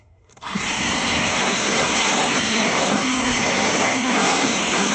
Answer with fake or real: fake